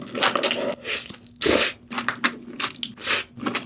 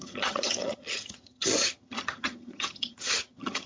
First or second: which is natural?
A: first